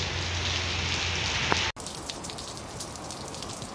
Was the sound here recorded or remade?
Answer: recorded